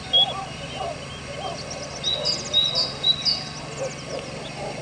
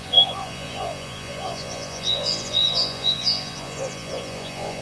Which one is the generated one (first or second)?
second